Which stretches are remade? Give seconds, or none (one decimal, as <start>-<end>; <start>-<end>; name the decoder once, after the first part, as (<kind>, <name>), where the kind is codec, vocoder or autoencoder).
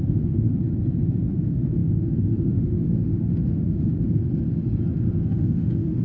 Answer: 0.0-0.5 (autoencoder, DAC-VAE); 1.3-3.9; 5.3-6.0